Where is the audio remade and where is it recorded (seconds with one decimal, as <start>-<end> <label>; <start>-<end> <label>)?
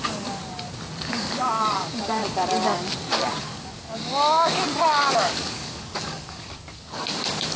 0.0-0.4 remade; 0.4-1.1 recorded; 1.1-2.2 remade; 2.2-3.4 recorded; 3.4-4.1 remade; 4.1-5.1 recorded; 5.1-7.6 remade